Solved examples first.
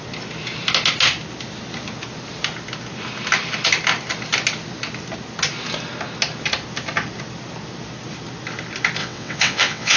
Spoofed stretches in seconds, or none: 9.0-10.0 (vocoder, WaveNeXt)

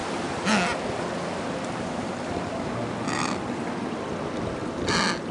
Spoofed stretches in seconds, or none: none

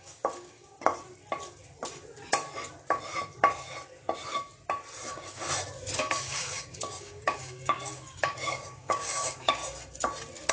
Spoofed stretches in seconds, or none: 0.0-0.9 (codec, DAC); 5.1-5.5; 6.0-9.6

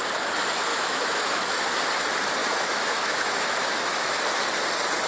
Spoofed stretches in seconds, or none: 0.7-1.7 (autoencoder, DAC-VAE); 2.4-4.2